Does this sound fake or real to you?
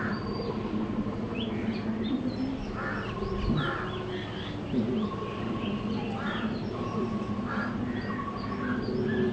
real